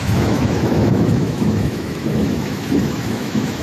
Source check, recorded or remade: remade